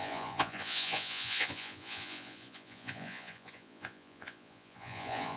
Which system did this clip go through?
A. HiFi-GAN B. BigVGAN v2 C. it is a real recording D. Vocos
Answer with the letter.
D